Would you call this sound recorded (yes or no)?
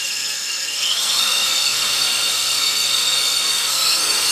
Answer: no